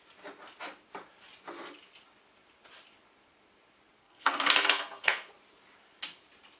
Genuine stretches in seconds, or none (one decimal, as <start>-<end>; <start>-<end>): 0.0-4.0; 5.3-6.6